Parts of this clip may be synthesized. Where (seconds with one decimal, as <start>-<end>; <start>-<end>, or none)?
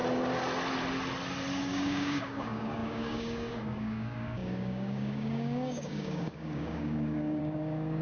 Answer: 1.6-8.0